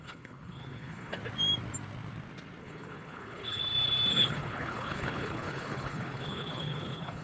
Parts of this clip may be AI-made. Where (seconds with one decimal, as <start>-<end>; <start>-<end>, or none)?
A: 0.0-1.2; 2.6-3.6; 4.1-7.2